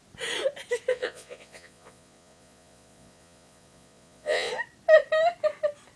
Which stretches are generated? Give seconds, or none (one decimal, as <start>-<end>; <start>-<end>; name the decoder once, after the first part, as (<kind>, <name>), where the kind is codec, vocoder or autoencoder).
0.9-4.5 (vocoder, Vocos)